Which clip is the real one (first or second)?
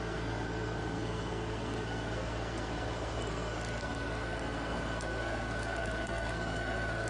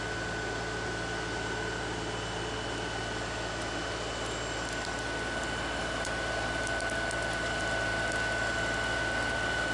second